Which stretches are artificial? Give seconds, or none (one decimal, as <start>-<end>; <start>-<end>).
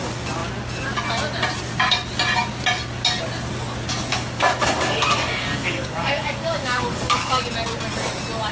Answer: 4.1-7.4